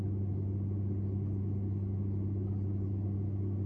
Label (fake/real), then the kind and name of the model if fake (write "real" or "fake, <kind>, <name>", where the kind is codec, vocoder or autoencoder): real